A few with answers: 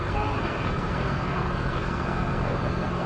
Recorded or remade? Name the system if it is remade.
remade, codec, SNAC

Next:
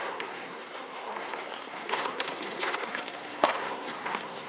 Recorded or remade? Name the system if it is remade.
remade, codec, SNAC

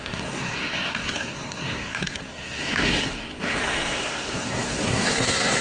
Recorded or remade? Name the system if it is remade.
remade, codec, SNAC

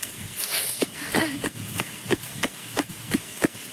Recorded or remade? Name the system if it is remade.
remade, codec, SNAC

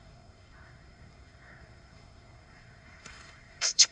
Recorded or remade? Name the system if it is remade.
remade, codec, SNAC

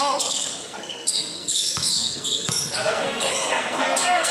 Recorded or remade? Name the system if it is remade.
remade, codec, SNAC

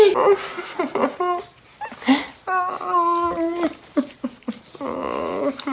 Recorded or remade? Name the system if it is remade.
recorded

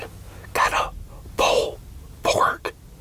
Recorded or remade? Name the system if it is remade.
recorded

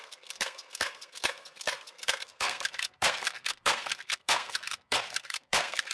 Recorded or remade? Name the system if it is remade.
remade, codec, SNAC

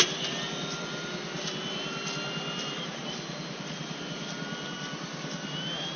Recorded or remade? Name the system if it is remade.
recorded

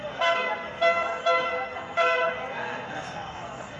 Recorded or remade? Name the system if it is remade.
remade, codec, SNAC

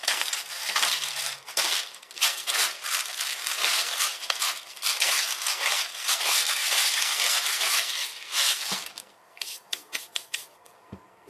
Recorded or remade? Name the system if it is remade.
remade, codec, SNAC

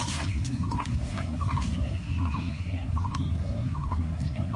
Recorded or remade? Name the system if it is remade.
remade, codec, SNAC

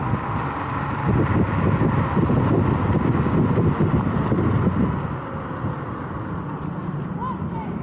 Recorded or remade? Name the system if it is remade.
recorded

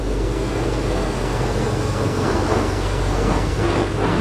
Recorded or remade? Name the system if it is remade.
remade, codec, SNAC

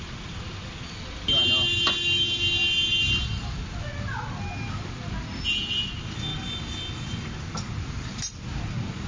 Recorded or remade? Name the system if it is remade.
recorded